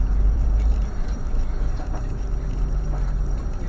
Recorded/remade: remade